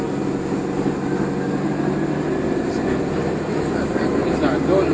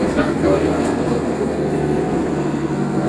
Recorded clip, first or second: first